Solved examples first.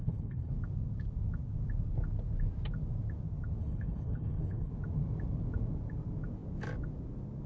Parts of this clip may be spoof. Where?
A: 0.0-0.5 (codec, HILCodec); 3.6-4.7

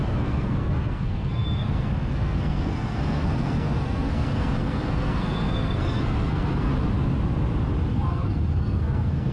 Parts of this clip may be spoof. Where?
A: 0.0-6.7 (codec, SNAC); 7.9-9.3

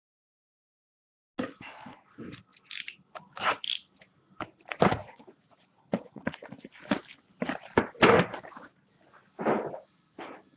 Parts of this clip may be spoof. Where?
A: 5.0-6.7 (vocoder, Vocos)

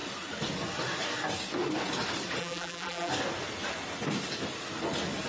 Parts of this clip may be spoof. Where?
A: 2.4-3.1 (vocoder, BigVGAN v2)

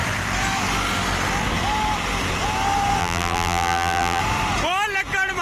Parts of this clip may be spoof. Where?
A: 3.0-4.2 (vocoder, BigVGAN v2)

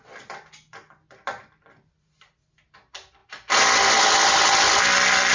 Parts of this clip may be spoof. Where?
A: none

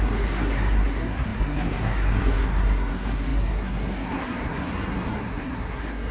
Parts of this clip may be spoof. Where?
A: 0.0-6.1 (codec, SNAC)

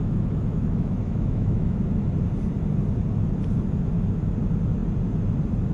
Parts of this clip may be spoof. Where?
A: 0.0-1.8 (autoencoder, DAC-VAE)